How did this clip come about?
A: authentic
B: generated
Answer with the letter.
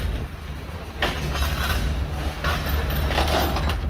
A